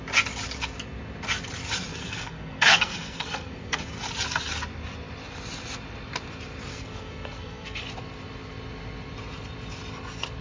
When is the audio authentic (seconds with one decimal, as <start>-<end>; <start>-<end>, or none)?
0.0-2.0; 3.9-6.7; 7.8-10.4